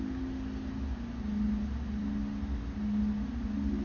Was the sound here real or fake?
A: real